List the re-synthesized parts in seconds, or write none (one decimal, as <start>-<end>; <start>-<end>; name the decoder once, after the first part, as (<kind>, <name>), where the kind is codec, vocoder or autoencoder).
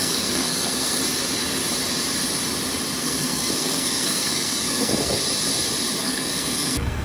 0.0-1.0 (codec, SNAC); 3.0-5.2; 6.0-7.0